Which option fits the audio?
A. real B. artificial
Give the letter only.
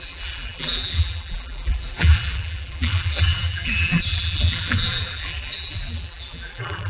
B